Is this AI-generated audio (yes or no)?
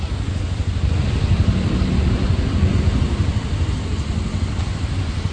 no